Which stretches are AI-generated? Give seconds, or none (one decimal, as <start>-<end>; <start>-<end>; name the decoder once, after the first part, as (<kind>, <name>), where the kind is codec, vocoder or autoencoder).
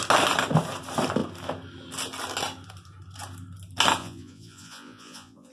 4.0-5.5 (vocoder, Vocos)